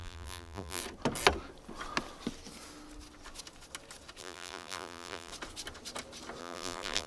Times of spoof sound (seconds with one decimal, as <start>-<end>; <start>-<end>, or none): 0.0-0.8; 4.2-5.3; 6.4-7.1